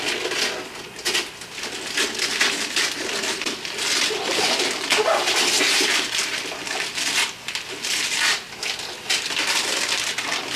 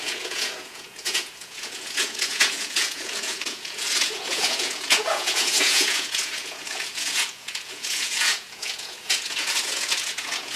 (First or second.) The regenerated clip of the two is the second